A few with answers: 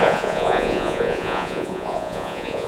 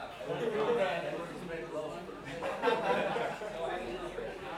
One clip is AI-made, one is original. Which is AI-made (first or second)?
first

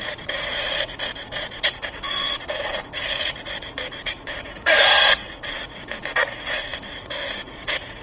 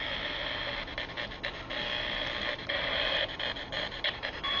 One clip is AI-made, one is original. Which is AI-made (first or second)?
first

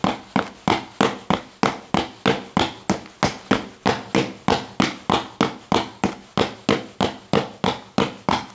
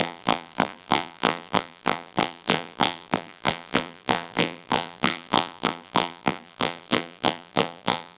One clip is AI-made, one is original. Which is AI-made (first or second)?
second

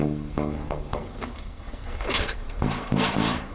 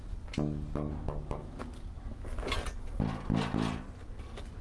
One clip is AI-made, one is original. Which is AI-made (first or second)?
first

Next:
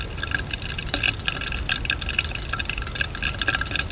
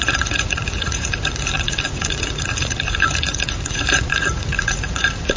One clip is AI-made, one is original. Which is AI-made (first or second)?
second